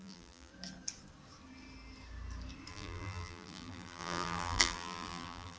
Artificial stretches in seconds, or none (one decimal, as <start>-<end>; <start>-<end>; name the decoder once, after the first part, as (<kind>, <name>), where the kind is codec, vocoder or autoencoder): 0.0-0.5 (vocoder, BigVGAN v2); 2.7-5.6